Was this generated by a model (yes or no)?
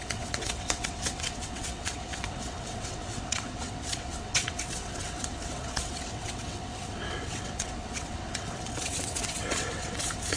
yes